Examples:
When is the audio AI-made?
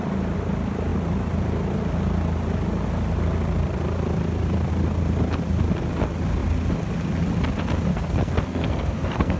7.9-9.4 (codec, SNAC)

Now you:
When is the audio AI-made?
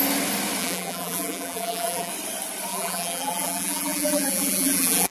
0.6-2.1 (vocoder, BigVGAN v2); 2.7-5.1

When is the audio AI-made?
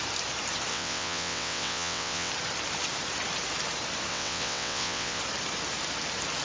0.7-2.3 (vocoder, WaveNeXt); 4.1-5.2